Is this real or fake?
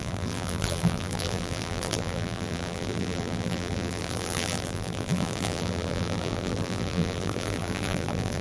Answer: fake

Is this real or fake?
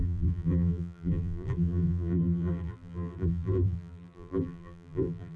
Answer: fake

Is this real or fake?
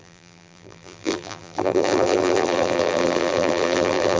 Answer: fake